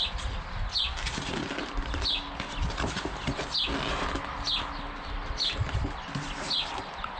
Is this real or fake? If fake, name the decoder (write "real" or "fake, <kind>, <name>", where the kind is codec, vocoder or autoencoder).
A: real